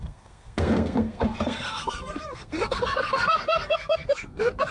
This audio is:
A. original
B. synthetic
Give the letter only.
B